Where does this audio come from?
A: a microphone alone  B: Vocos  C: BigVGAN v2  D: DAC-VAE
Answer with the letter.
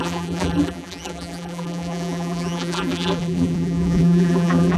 C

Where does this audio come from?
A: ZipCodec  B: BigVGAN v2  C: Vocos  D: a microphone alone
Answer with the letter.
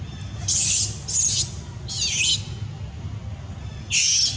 D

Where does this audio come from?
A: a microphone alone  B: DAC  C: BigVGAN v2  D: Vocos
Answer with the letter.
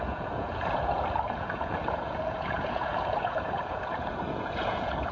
D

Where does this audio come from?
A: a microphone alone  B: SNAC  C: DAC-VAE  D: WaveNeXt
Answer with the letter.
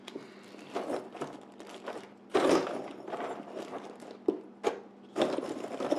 A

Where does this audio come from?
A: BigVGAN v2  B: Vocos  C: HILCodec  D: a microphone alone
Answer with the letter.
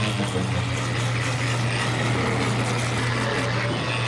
D